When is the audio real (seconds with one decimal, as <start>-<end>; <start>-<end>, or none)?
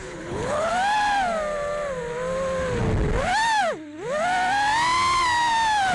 0.7-5.9